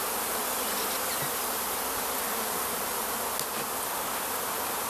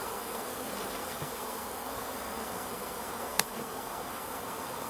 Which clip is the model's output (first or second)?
second